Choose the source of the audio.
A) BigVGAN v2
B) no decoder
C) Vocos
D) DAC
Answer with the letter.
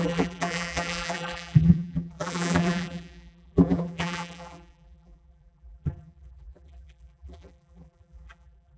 A